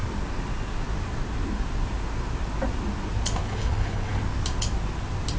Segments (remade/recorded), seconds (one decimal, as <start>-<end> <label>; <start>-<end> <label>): 0.0-3.4 recorded; 3.4-4.2 remade; 4.2-5.4 recorded

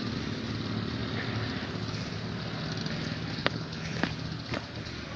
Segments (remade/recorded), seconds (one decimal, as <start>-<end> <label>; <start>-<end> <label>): 0.0-3.4 recorded; 3.4-4.0 remade; 4.0-5.2 recorded

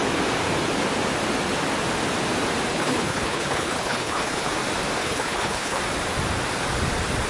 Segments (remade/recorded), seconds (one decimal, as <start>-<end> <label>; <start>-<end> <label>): 0.0-2.7 recorded; 2.7-4.5 remade; 4.5-5.0 recorded; 5.0-5.8 remade; 5.8-7.3 recorded

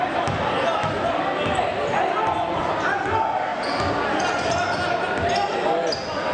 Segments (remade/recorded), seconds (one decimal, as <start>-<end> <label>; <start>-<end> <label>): 0.0-6.3 recorded

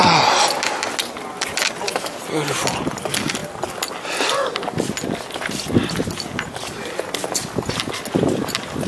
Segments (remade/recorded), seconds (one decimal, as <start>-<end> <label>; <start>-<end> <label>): 0.0-8.9 recorded

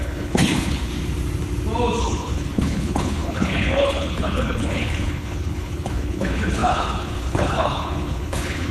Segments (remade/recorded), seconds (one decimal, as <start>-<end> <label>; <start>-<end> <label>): 0.0-0.9 remade; 0.9-2.0 recorded; 2.0-8.7 remade

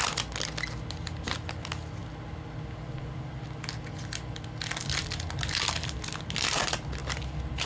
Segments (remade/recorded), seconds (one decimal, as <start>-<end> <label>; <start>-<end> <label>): 0.0-7.7 recorded